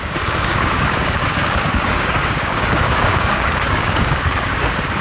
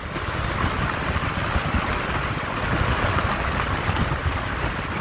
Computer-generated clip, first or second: first